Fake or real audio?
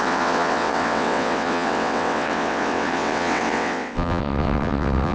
fake